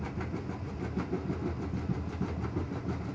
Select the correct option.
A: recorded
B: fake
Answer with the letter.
A